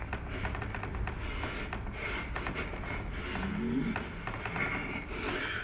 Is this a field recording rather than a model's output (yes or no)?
yes